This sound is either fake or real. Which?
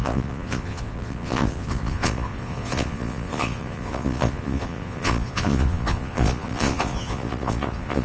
fake